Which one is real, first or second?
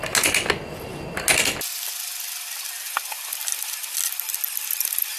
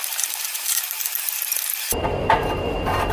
first